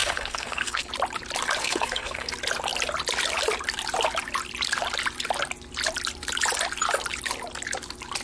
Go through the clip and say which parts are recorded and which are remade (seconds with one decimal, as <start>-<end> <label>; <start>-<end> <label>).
0.0-0.9 remade; 0.9-1.6 recorded; 1.6-2.3 remade; 2.3-8.2 recorded